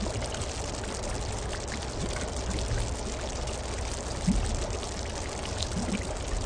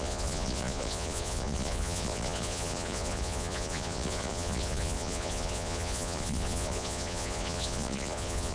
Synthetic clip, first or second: second